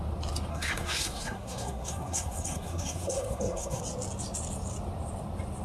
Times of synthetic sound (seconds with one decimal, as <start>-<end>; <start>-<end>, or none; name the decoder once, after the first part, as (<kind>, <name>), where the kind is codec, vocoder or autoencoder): 0.5-3.8 (codec, SNAC)